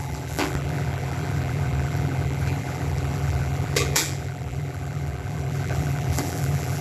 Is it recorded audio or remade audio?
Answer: remade